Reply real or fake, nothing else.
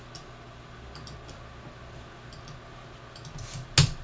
real